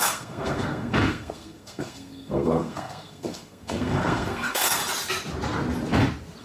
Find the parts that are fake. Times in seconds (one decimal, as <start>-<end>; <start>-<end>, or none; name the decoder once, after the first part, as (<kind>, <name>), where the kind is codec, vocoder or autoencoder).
0.0-4.8 (codec, SNAC)